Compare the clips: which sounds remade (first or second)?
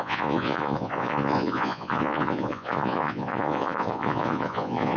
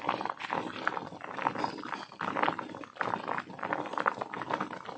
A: first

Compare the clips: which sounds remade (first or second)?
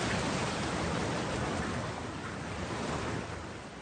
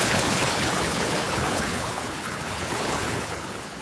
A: second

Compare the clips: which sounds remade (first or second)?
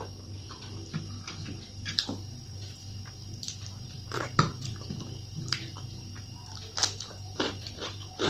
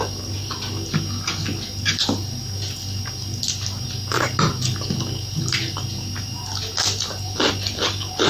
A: first